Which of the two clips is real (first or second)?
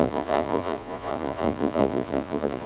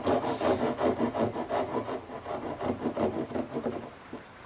second